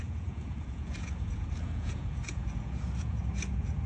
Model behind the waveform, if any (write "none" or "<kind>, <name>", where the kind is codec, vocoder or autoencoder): vocoder, Vocos